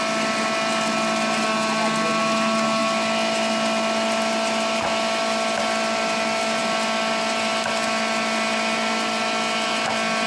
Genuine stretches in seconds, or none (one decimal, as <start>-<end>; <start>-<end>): 0.0-10.3